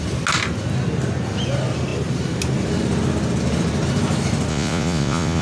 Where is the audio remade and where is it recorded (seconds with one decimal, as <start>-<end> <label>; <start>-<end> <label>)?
0.0-4.5 recorded; 4.5-5.4 remade